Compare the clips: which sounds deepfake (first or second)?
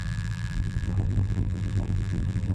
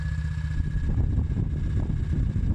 first